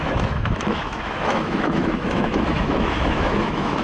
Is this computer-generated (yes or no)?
yes